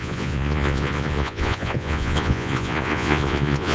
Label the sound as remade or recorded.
remade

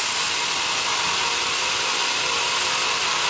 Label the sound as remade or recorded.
recorded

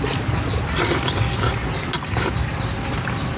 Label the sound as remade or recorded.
recorded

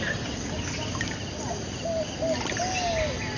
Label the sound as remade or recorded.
recorded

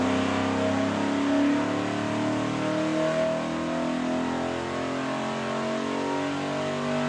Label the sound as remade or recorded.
recorded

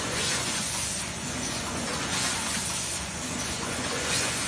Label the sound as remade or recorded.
remade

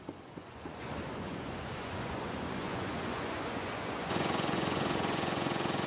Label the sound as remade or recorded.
remade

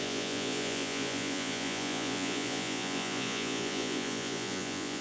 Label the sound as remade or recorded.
remade